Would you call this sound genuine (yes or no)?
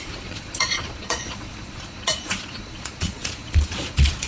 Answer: no